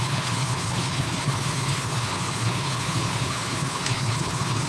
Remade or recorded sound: remade